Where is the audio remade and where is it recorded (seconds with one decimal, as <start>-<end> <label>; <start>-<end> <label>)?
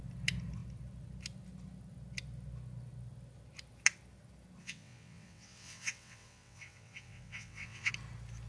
0.0-4.6 recorded; 4.6-7.9 remade; 7.9-8.5 recorded